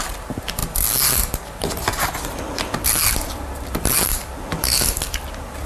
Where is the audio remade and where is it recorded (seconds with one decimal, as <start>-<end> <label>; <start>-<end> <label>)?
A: 0.0-5.7 recorded